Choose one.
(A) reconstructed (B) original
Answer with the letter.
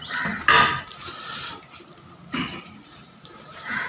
B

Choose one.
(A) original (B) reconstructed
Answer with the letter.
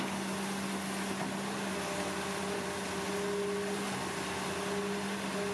A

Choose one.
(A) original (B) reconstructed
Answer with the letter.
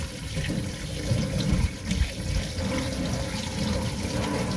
A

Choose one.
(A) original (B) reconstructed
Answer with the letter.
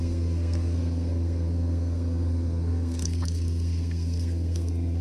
B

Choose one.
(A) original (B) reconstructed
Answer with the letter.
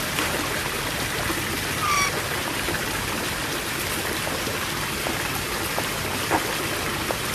A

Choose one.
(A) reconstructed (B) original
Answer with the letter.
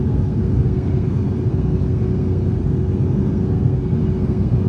A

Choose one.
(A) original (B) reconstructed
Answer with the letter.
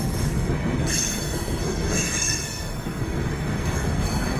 B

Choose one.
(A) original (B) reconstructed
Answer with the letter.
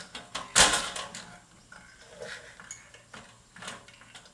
A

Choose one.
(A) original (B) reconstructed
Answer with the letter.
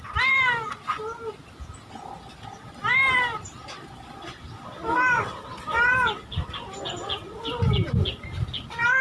A